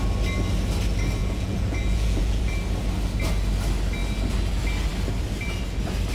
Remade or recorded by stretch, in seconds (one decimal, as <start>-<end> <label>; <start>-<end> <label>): 0.0-1.2 recorded; 1.2-2.5 remade; 2.5-6.1 recorded